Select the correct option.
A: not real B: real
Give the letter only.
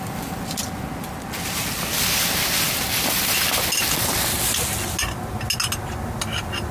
B